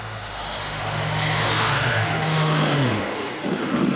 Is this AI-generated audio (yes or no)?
yes